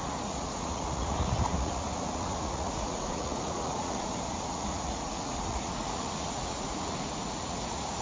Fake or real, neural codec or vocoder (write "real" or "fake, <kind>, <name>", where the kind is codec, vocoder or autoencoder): fake, vocoder, Vocos